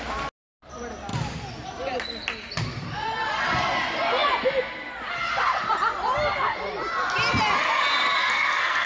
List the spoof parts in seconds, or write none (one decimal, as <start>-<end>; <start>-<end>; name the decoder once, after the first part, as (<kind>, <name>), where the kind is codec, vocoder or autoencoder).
8.2-8.9 (codec, SNAC)